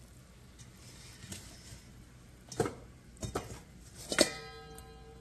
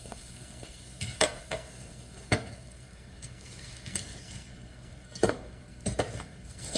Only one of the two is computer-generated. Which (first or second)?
second